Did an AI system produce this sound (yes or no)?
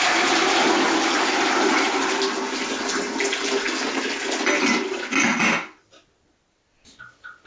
no